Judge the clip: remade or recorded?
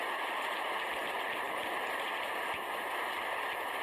recorded